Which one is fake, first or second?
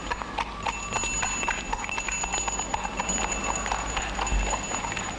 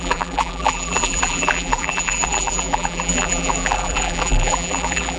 second